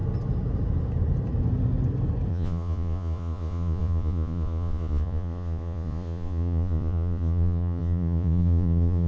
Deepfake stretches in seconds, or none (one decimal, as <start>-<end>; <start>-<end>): 2.3-9.1